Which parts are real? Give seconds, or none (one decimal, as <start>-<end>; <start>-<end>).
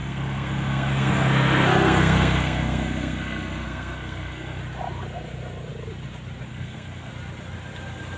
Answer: 4.6-6.5; 7.1-8.2